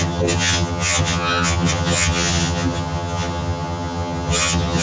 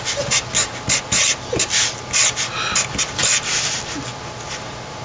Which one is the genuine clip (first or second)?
second